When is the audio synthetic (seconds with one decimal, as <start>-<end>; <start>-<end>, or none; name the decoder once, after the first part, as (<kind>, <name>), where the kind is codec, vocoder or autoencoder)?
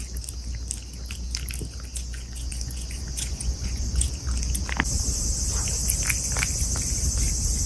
1.9-4.1 (vocoder, Vocos)